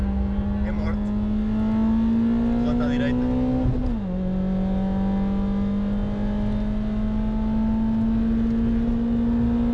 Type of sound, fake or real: real